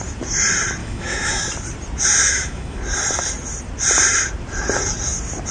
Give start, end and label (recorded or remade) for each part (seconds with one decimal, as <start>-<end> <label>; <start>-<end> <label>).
0.0-0.8 recorded; 0.8-1.4 remade; 1.4-2.2 recorded; 2.2-2.8 remade; 2.8-5.5 recorded

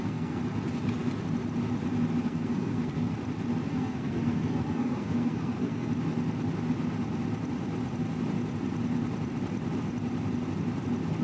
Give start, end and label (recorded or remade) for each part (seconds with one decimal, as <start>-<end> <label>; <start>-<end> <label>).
0.0-0.4 remade; 0.4-2.2 recorded; 2.2-3.1 remade; 3.1-3.7 recorded; 3.7-5.9 remade; 5.9-11.2 recorded

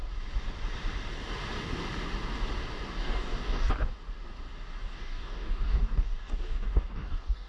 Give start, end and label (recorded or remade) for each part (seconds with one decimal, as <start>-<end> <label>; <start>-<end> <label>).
0.0-3.0 recorded; 3.0-3.7 remade; 3.7-4.8 recorded; 4.8-7.5 remade

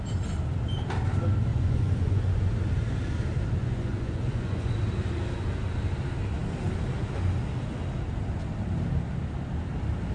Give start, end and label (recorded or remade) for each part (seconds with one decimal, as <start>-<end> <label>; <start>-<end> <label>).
0.0-1.5 recorded; 1.5-2.5 remade; 2.5-3.6 recorded; 3.6-4.7 remade; 4.7-10.1 recorded

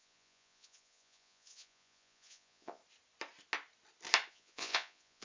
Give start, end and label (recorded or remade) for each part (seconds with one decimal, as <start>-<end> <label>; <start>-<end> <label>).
0.0-2.8 remade; 2.8-4.3 recorded; 4.3-5.2 remade

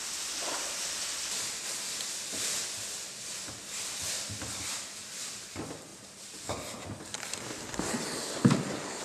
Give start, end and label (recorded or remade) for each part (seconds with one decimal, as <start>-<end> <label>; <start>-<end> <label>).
0.0-9.0 recorded